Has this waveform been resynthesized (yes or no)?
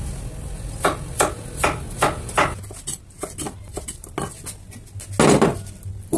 no